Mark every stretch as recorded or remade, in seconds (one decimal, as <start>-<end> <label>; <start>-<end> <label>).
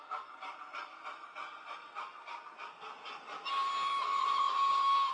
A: 0.0-5.1 recorded